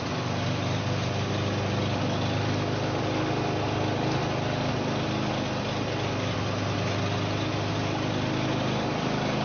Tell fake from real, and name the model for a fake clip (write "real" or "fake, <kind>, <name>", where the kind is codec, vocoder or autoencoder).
real